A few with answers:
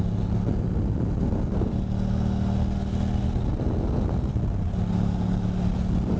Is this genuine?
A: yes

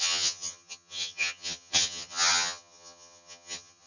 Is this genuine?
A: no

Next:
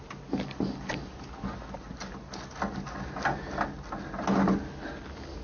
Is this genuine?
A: yes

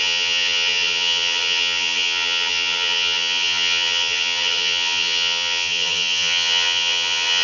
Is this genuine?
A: no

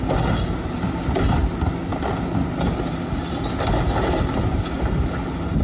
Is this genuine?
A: yes